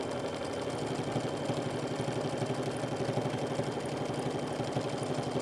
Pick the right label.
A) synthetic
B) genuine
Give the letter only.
B